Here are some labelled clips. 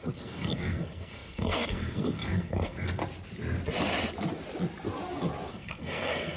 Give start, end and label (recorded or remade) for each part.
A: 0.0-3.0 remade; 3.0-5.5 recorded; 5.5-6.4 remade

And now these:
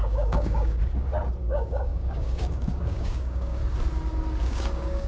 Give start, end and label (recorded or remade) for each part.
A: 0.0-0.8 remade; 0.8-1.4 recorded; 1.4-3.6 remade; 3.6-4.4 recorded; 4.4-5.1 remade

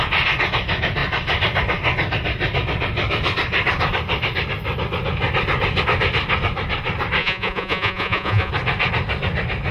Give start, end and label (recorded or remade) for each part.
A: 0.0-7.2 recorded; 7.2-8.5 remade; 8.5-9.7 recorded

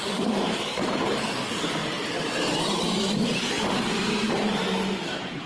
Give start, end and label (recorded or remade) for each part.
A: 0.0-5.5 remade

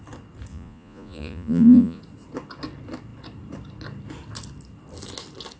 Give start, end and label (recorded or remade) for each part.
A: 0.0-0.5 recorded; 0.5-2.0 remade; 2.0-5.6 recorded

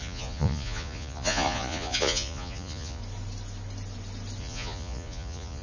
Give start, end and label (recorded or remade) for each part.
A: 0.0-3.0 remade; 3.0-4.4 recorded; 4.4-5.6 remade